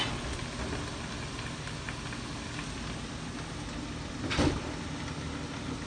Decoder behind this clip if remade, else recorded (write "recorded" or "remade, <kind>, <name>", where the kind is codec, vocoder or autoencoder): recorded